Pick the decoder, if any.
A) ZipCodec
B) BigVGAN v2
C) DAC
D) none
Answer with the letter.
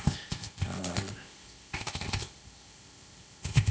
A